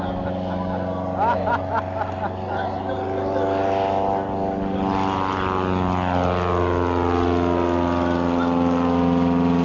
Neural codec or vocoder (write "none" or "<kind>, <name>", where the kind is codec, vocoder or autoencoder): none